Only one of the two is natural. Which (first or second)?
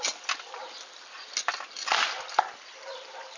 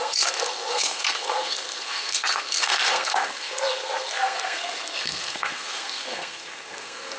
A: first